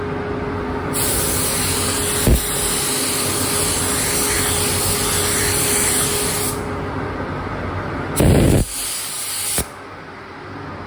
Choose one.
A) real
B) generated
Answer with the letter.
A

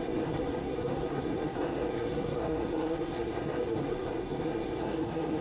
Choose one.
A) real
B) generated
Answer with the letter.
B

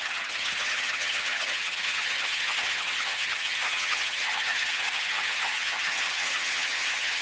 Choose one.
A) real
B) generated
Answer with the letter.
B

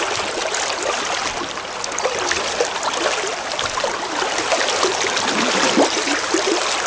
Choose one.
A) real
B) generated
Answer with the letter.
A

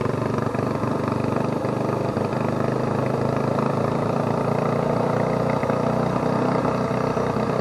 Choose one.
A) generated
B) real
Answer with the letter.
B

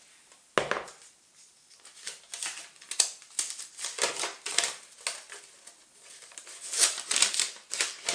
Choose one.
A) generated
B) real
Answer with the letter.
B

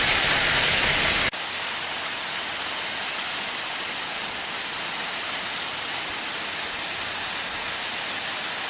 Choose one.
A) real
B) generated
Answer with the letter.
A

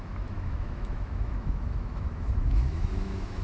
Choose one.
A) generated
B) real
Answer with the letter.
A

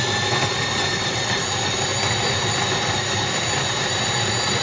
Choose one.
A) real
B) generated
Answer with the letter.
A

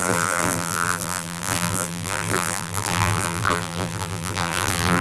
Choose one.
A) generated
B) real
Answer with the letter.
A